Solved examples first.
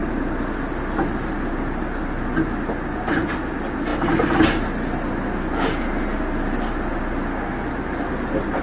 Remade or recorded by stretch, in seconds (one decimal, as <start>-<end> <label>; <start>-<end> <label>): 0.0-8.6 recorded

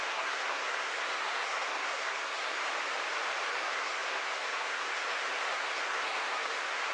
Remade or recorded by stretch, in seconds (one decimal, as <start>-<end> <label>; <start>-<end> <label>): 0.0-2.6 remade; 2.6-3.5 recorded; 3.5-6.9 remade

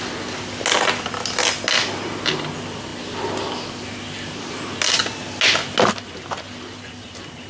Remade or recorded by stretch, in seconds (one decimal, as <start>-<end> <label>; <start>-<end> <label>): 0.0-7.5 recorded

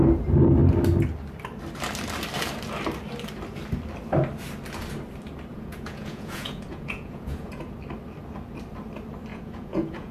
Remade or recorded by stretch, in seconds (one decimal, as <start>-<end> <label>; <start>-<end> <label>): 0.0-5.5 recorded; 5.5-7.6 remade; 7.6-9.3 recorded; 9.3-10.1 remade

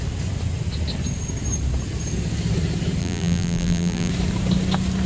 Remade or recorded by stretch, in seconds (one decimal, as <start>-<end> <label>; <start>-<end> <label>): 0.0-3.0 recorded; 3.0-4.1 remade; 4.1-5.1 recorded

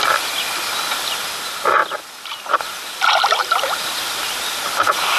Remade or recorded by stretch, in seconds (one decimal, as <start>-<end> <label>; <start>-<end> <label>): 0.0-3.4 recorded; 3.4-4.0 remade; 4.0-5.2 recorded

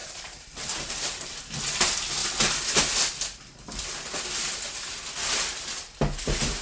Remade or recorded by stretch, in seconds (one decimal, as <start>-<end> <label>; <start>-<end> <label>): 0.0-1.4 remade; 1.4-6.6 recorded